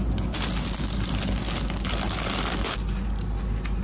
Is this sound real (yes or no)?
yes